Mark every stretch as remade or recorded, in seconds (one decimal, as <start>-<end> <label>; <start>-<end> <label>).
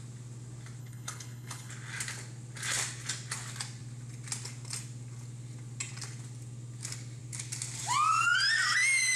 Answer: 0.0-0.8 recorded; 0.8-1.7 remade; 1.7-9.2 recorded